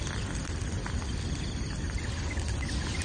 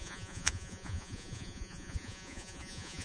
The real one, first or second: first